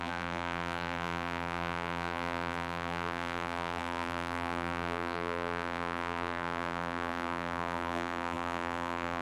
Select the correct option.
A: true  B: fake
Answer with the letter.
B